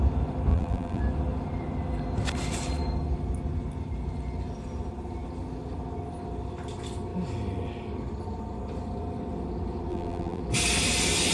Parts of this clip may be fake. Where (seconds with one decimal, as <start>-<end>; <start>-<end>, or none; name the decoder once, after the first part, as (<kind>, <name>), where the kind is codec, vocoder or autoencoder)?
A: 0.5-1.0 (vocoder, BigVGAN v2); 9.9-10.4